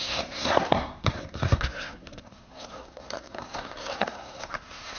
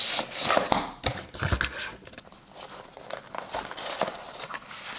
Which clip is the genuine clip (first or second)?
second